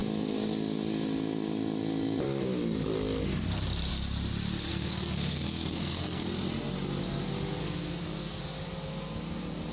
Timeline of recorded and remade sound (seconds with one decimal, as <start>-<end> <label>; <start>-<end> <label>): 0.0-4.7 recorded; 4.7-6.3 remade; 6.3-7.6 recorded; 7.6-8.4 remade; 8.4-9.7 recorded

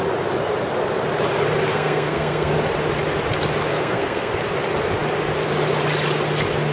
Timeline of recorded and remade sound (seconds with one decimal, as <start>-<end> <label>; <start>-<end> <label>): 0.0-1.7 recorded; 1.7-2.5 remade; 2.5-3.7 recorded; 3.7-4.3 remade; 4.3-6.7 recorded

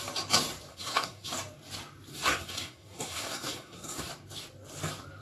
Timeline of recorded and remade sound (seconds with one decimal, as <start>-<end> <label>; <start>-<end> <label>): 0.0-0.7 recorded; 0.7-1.3 remade; 1.3-2.1 recorded; 2.1-4.1 remade; 4.1-5.2 recorded

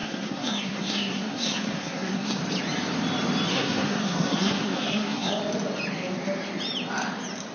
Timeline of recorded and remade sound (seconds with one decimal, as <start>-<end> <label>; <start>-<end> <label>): 0.0-2.4 remade; 2.4-3.5 recorded; 3.5-5.4 remade; 5.4-7.5 recorded

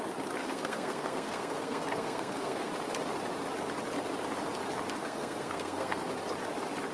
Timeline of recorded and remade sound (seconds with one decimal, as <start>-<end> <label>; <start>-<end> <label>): 0.0-0.4 recorded; 0.4-2.7 remade; 2.7-5.0 recorded; 5.0-6.1 remade; 6.1-6.9 recorded